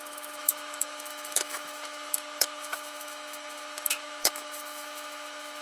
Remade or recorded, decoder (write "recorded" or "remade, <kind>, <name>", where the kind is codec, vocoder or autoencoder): remade, autoencoder, DAC-VAE